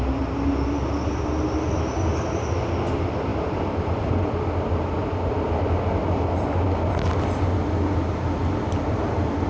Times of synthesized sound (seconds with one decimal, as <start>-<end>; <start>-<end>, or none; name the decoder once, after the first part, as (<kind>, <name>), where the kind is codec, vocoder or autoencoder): none